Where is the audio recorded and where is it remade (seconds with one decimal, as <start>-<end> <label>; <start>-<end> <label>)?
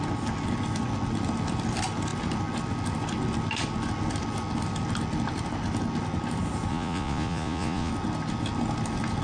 0.0-6.7 recorded; 6.7-7.9 remade; 7.9-9.2 recorded